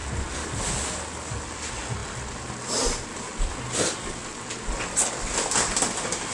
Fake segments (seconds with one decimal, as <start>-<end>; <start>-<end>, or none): none